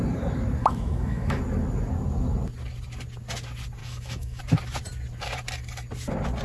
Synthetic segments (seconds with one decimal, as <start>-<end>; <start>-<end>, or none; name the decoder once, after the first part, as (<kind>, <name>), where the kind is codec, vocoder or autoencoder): 0.6-1.4 (autoencoder, DAC-VAE); 3.8-4.4